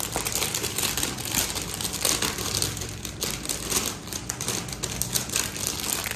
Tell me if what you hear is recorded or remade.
remade